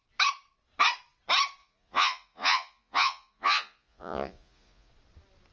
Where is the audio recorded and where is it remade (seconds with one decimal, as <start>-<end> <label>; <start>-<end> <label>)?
0.0-1.6 recorded; 1.6-4.9 remade; 4.9-5.5 recorded